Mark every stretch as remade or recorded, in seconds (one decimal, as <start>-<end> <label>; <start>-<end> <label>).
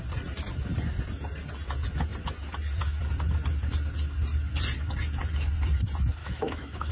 0.0-6.2 recorded; 6.2-6.9 remade